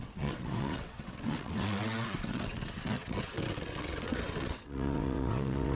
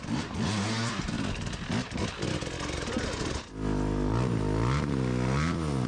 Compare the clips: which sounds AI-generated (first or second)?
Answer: first